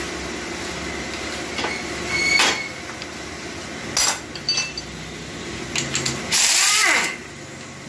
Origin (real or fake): real